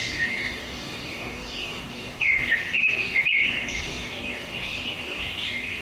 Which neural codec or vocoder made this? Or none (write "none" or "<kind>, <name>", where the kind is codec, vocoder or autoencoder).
codec, DAC